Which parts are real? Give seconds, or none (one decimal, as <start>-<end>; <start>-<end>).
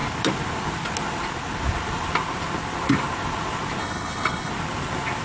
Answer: 0.0-3.8; 4.5-5.2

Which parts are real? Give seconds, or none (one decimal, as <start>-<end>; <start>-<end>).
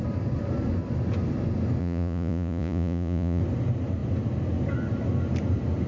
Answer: 0.0-1.8; 3.4-5.9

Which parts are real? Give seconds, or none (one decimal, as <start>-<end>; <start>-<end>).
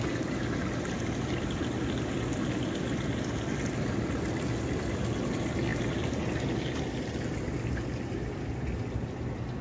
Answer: 0.0-9.6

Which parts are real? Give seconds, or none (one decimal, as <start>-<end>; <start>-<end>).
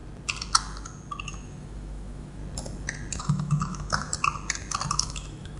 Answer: 0.0-1.2; 2.4-3.2; 4.1-4.9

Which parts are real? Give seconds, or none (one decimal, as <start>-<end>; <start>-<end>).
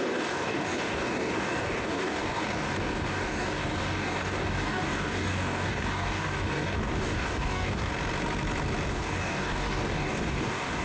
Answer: 7.9-8.9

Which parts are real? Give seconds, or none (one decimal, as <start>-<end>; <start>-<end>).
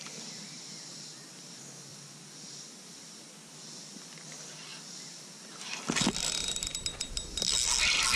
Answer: 0.0-1.9; 3.5-6.7; 7.3-8.2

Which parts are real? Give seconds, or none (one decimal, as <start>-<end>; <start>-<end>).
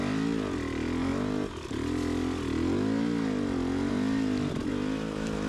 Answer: 0.0-5.5